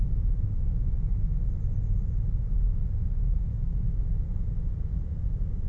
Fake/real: real